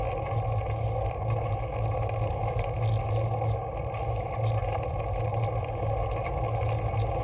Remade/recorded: recorded